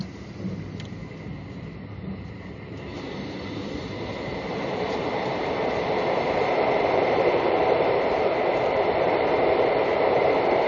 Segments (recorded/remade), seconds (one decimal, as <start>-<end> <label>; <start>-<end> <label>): 0.0-1.0 remade; 1.0-2.3 recorded; 2.3-10.7 remade